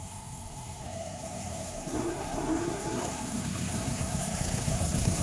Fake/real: fake